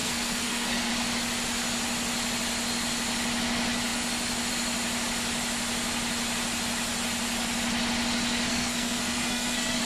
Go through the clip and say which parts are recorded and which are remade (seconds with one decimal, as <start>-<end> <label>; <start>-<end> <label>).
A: 0.0-0.9 remade; 0.9-8.5 recorded; 8.5-9.8 remade

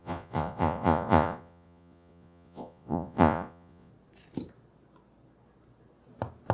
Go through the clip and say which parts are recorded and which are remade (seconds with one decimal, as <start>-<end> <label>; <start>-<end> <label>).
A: 0.0-3.9 remade; 3.9-6.5 recorded

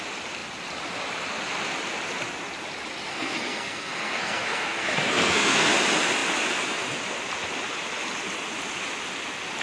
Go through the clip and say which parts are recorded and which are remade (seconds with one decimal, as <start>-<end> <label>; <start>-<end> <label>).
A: 0.0-3.1 recorded; 3.1-5.7 remade; 5.7-9.6 recorded

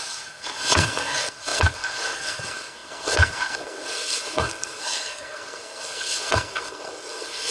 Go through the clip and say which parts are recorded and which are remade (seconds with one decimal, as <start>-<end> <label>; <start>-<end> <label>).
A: 0.0-7.5 remade

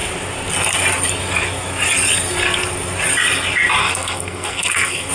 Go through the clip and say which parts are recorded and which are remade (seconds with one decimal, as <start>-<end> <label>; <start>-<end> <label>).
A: 0.0-3.8 recorded; 3.8-5.1 remade

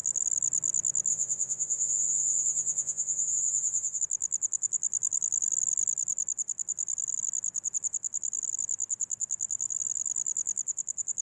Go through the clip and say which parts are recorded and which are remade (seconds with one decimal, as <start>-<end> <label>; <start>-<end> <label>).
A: 0.0-1.1 recorded; 1.1-4.0 remade; 4.0-11.2 recorded

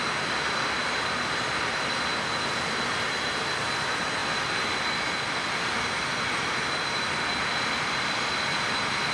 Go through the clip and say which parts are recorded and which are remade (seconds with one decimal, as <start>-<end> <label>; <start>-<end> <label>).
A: 0.0-9.1 recorded